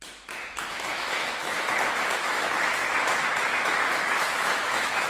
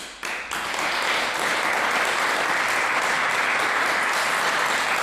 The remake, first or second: first